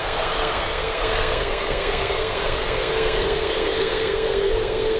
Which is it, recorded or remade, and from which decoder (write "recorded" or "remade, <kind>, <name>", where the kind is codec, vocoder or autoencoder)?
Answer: remade, codec, SNAC